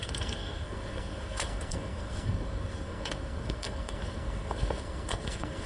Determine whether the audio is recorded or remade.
remade